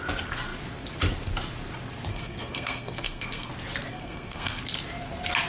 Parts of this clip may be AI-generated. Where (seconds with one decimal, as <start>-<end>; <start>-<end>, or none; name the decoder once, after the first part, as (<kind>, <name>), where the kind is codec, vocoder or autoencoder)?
2.1-3.5 (codec, SNAC); 3.9-4.6